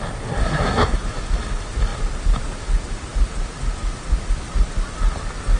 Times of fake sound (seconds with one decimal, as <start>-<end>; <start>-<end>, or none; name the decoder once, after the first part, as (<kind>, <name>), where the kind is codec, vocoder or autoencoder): 0.4-1.0 (codec, SNAC)